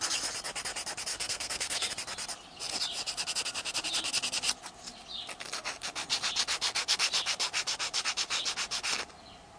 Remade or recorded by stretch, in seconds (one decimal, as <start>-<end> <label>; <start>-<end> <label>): 0.0-1.1 recorded; 1.1-1.9 remade; 1.9-9.6 recorded